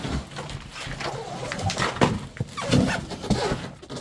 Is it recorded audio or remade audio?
recorded